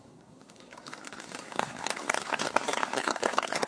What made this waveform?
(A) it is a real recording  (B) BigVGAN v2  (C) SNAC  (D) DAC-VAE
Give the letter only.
C